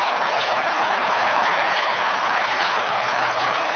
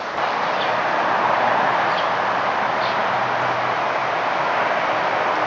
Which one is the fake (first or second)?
first